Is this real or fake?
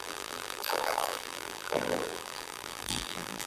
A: fake